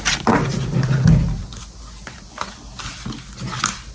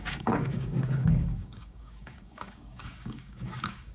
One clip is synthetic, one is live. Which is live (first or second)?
first